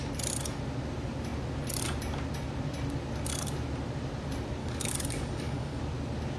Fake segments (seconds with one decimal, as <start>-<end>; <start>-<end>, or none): 4.6-5.8